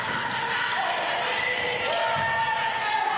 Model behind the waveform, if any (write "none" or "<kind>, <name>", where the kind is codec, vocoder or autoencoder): none